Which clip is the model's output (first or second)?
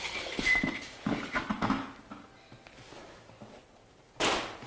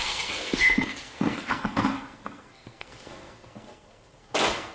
second